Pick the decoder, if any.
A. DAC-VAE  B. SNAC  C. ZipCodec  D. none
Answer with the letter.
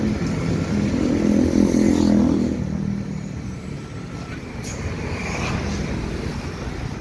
D